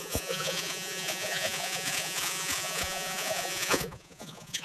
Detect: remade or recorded remade